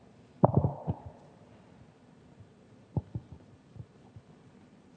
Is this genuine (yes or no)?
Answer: no